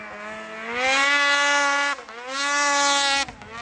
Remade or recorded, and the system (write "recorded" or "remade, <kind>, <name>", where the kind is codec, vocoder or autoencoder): recorded